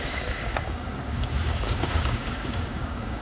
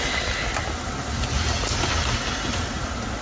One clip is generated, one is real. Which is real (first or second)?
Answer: second